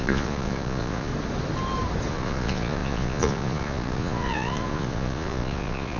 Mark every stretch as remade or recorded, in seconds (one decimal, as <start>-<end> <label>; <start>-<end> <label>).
0.0-1.1 remade; 1.1-2.1 recorded; 2.1-6.0 remade